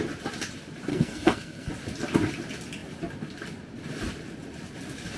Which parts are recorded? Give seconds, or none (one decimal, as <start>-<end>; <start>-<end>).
0.0-0.9; 1.7-5.2